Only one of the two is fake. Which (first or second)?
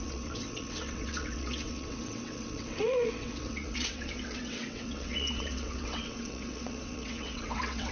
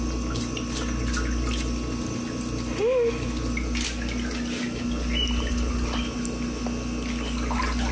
first